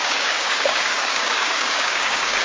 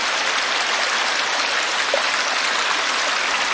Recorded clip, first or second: second